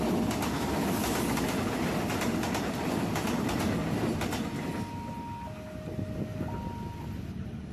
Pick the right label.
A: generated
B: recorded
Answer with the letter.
B